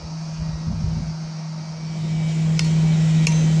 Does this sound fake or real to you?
real